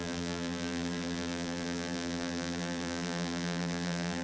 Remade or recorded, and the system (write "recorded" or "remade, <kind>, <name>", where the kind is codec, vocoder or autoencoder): remade, vocoder, BigVGAN v2